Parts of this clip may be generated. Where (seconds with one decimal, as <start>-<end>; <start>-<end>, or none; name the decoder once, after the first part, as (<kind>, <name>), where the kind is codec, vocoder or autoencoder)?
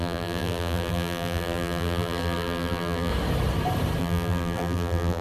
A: 0.0-3.1 (vocoder, BigVGAN v2); 4.0-5.2